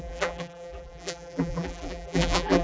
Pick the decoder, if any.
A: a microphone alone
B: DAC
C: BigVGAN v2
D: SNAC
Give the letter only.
C